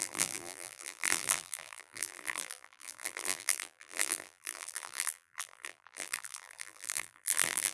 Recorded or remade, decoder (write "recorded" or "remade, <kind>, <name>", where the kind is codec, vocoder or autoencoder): remade, vocoder, BigVGAN v2